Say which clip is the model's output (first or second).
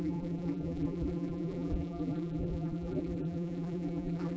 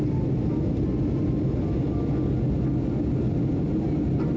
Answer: first